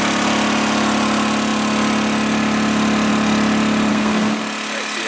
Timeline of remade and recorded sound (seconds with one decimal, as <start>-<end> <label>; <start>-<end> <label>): 0.0-3.9 recorded; 3.9-4.4 remade; 4.4-5.1 recorded